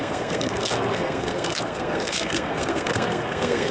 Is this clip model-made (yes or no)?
yes